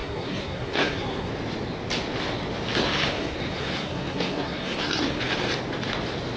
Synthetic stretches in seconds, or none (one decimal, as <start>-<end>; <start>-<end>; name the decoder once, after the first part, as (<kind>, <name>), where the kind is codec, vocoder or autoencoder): 0.0-1.3 (codec, SNAC); 2.8-5.2